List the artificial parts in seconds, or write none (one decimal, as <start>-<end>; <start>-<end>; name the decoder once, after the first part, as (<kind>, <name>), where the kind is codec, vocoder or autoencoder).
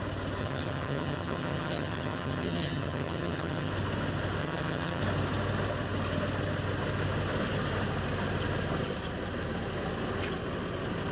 0.4-3.7 (vocoder, HiFi-GAN); 4.4-5.0